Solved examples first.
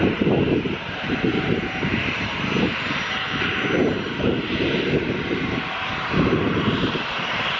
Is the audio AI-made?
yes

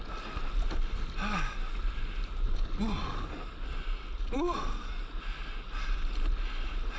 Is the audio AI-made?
no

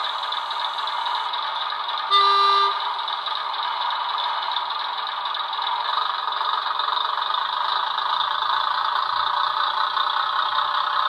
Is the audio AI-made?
no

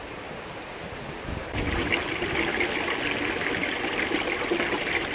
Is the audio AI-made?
no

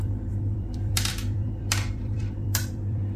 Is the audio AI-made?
yes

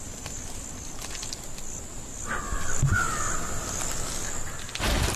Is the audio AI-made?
no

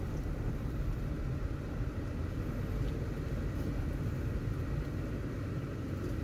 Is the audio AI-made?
no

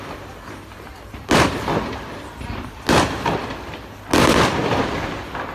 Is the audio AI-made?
no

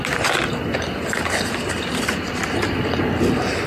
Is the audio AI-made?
no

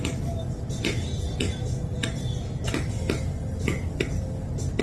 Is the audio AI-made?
no